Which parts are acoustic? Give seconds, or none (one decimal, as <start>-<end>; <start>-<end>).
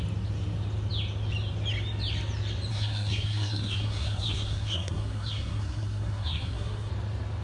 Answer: 0.0-2.7; 6.9-7.4